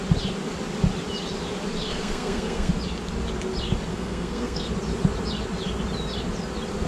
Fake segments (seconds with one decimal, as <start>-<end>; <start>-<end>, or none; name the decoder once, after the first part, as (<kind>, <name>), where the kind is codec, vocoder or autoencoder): 1.9-2.7 (codec, SNAC); 3.9-4.7